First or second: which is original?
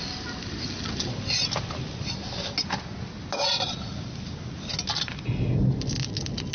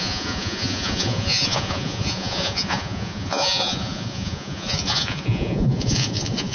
first